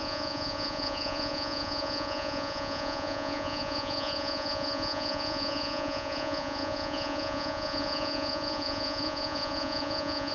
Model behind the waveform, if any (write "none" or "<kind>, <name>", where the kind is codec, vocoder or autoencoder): vocoder, Vocos